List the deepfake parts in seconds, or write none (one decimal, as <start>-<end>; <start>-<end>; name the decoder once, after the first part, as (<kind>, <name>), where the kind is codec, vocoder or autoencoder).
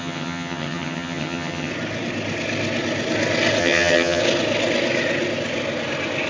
0.0-1.7 (vocoder, HiFi-GAN); 3.6-4.2